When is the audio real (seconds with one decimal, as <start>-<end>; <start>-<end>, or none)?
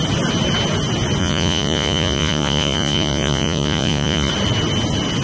0.0-1.2; 4.3-5.2